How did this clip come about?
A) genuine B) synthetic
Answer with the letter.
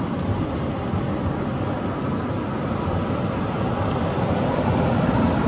B